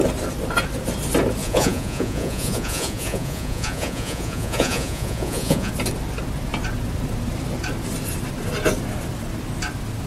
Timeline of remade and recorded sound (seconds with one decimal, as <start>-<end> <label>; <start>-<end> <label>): 0.0-1.4 recorded; 1.4-5.7 remade; 5.7-10.1 recorded